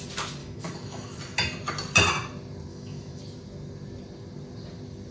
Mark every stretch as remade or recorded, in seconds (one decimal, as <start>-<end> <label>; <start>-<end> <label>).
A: 0.0-0.4 recorded; 0.4-1.2 remade; 1.2-2.7 recorded; 2.7-3.2 remade; 3.2-5.1 recorded